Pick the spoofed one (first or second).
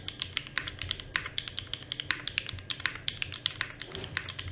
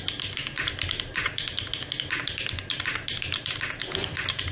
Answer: second